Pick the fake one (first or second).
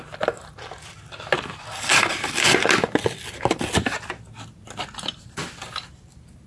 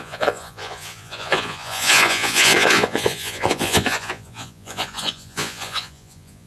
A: second